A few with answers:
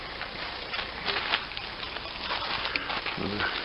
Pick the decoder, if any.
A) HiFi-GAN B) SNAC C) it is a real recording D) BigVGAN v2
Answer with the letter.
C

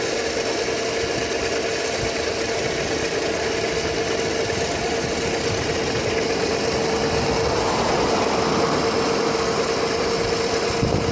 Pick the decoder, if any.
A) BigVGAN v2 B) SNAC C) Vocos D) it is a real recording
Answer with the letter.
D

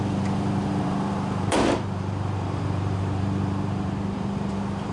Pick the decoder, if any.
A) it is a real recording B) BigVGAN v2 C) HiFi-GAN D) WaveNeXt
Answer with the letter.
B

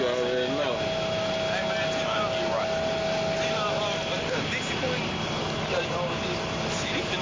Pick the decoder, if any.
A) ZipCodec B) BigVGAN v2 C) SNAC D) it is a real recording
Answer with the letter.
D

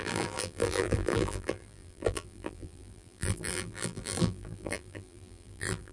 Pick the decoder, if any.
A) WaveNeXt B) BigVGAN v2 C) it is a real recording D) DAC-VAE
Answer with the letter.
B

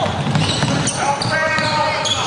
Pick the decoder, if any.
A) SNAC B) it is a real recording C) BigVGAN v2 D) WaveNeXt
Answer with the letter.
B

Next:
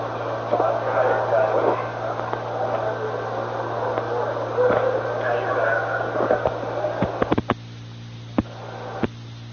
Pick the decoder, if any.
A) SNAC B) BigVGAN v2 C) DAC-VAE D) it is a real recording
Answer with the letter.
D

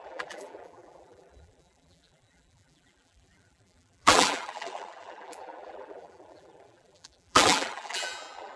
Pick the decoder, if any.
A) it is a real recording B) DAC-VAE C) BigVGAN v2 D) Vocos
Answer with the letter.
C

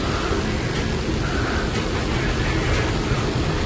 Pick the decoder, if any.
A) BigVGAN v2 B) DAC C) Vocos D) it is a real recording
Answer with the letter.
D